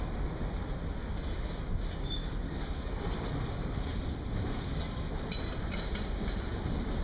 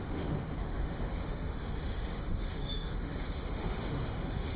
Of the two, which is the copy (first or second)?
second